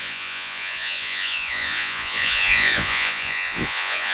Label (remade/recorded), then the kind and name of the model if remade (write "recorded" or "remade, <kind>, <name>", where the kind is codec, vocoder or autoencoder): remade, vocoder, Vocos